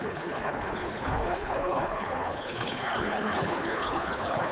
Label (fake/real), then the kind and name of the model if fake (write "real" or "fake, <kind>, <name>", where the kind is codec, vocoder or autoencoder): fake, codec, HILCodec